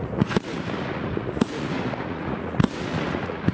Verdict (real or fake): fake